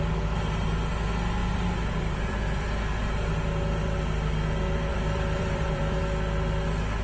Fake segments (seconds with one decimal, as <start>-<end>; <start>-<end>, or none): 1.4-2.8; 4.9-6.0